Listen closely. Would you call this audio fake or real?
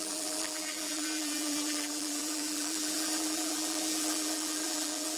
fake